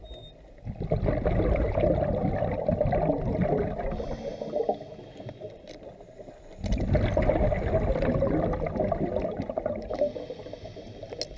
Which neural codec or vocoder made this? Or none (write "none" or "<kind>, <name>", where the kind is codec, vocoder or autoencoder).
none